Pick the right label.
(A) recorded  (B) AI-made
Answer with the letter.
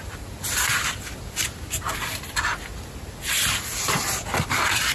A